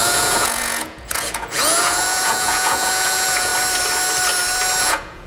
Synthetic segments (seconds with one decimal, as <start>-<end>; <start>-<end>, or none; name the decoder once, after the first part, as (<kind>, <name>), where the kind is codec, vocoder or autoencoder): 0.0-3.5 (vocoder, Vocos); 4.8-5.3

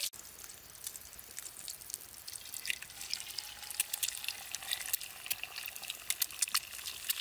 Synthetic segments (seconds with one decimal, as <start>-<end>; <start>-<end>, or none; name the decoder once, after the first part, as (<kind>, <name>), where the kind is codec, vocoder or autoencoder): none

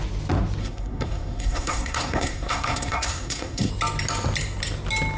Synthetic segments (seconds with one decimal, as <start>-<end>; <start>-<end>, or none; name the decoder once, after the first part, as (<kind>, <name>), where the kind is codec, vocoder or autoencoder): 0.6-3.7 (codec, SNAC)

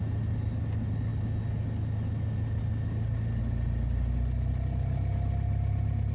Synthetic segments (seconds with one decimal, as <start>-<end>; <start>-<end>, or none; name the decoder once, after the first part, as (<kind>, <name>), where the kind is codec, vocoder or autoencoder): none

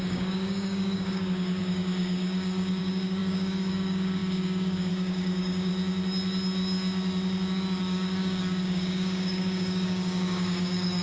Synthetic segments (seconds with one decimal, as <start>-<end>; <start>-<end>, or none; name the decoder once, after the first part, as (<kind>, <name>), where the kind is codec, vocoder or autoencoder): 0.0-5.7 (codec, DAC); 7.8-11.0

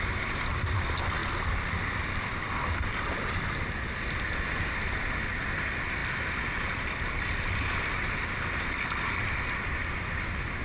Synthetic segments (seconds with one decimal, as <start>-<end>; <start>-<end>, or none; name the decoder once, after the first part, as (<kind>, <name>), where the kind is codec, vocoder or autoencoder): none

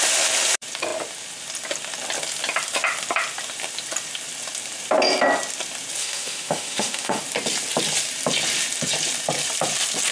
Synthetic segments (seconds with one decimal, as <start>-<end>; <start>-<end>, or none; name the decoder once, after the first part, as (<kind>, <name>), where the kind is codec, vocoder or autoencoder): 6.0-7.2 (autoencoder, DAC-VAE)

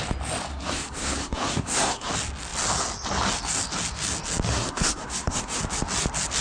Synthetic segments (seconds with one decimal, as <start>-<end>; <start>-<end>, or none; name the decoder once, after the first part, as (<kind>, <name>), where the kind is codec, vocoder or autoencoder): 0.5-2.1 (codec, SNAC); 4.5-5.6